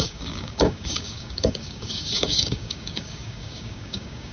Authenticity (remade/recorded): remade